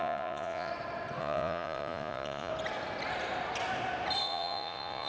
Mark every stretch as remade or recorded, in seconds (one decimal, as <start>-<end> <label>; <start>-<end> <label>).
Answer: 0.0-0.7 remade; 0.7-1.2 recorded; 1.2-2.5 remade; 2.5-4.2 recorded; 4.2-5.1 remade